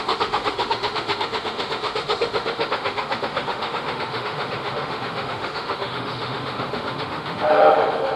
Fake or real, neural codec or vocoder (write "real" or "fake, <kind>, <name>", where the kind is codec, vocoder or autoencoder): fake, autoencoder, DAC-VAE